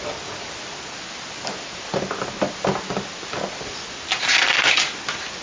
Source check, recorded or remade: recorded